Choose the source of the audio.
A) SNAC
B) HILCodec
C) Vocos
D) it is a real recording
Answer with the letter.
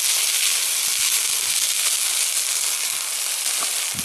D